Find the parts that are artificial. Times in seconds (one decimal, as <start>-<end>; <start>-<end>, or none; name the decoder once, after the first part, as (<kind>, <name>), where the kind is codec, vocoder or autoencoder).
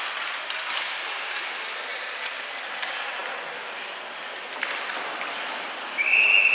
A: 1.9-2.8 (vocoder, BigVGAN v2)